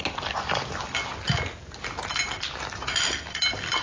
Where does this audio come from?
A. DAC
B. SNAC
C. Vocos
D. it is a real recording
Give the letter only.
D